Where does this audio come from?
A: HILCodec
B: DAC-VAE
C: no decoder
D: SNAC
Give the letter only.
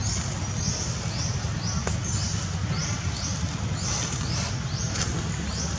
C